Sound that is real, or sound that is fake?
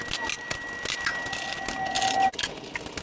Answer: real